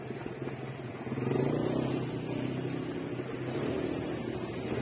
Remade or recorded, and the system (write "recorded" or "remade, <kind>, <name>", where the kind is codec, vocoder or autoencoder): recorded